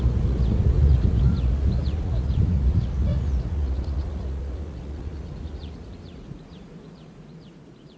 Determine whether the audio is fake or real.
fake